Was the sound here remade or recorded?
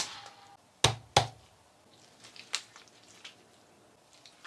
recorded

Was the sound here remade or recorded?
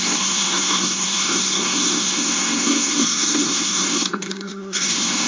remade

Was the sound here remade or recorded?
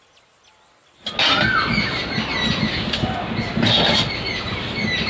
recorded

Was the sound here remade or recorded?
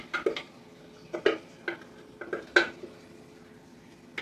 recorded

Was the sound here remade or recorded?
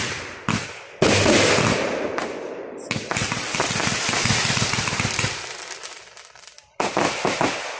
remade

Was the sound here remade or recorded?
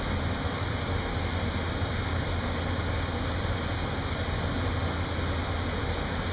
recorded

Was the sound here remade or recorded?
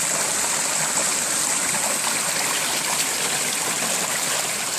remade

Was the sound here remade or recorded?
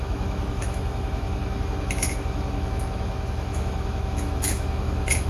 remade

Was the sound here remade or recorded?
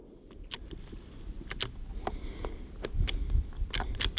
recorded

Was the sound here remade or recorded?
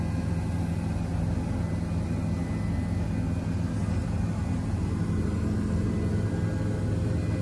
recorded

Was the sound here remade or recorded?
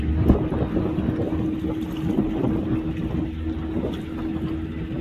recorded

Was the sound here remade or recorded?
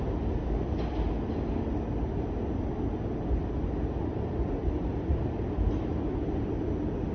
recorded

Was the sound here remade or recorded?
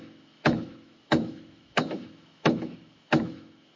remade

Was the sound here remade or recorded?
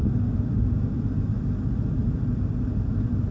recorded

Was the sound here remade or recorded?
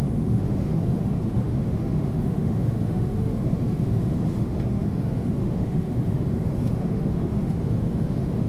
remade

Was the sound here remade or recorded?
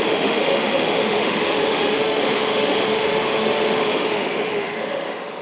remade